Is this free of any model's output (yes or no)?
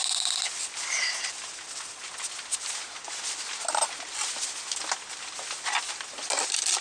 yes